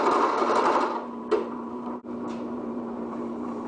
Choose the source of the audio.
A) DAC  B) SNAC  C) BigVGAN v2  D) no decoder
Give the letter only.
C